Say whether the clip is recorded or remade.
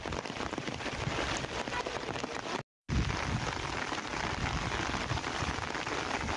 recorded